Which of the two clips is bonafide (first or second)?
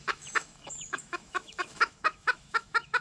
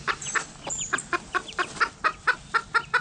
second